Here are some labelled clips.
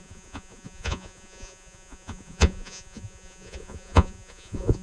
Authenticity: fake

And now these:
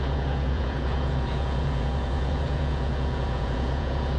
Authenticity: fake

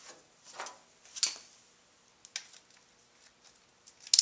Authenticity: real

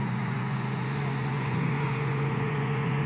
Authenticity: fake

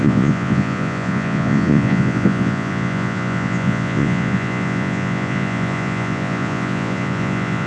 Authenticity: fake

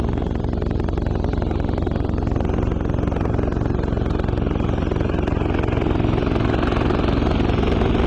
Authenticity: real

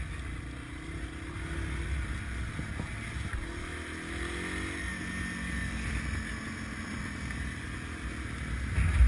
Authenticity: real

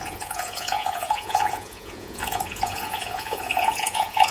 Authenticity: fake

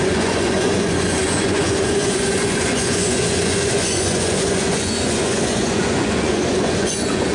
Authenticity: fake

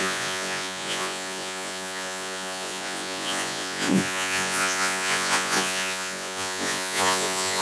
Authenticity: fake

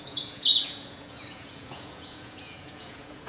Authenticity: fake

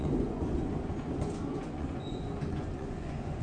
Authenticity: fake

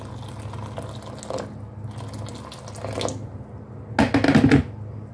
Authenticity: real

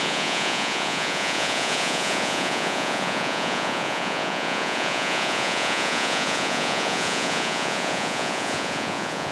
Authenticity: fake